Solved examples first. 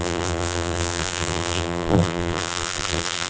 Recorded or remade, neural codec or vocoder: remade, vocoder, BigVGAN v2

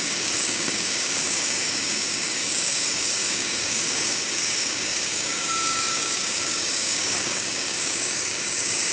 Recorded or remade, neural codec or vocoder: remade, codec, DAC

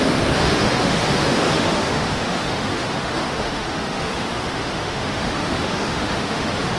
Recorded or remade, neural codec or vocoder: remade, autoencoder, DAC-VAE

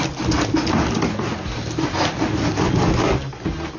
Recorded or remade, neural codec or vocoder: recorded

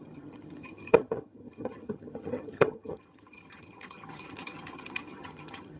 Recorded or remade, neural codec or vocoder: remade, vocoder, HiFi-GAN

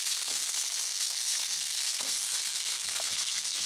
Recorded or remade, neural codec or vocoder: remade, codec, SNAC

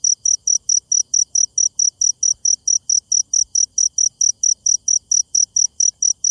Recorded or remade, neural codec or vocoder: recorded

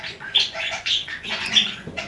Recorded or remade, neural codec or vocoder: remade, vocoder, Vocos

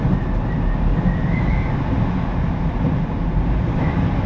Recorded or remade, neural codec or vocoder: recorded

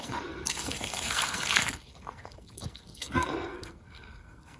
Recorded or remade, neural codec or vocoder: remade, codec, SNAC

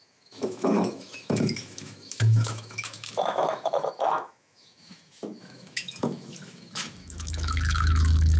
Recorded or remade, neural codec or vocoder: remade, autoencoder, DAC-VAE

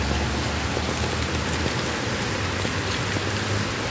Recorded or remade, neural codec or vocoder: recorded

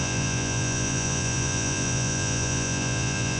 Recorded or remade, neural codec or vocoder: remade, vocoder, Vocos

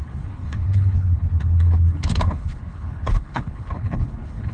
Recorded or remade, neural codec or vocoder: remade, codec, HILCodec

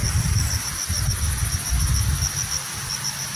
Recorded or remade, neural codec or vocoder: recorded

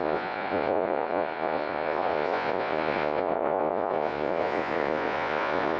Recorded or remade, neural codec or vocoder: remade, vocoder, Vocos